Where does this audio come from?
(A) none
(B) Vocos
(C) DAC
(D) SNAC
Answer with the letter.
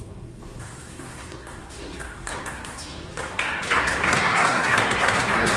D